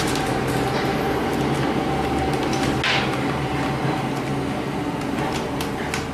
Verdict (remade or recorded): recorded